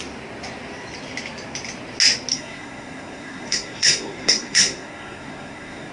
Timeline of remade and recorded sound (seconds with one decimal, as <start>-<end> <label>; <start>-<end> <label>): 0.0-2.3 recorded; 2.3-5.9 remade